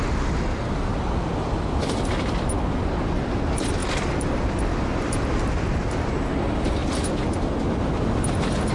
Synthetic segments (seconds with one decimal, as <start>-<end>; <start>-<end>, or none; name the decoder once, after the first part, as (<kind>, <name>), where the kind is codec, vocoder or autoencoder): 3.8-6.1 (vocoder, BigVGAN v2)